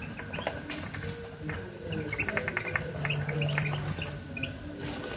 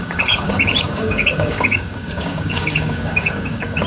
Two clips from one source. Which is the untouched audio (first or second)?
first